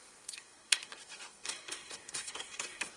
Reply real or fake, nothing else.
fake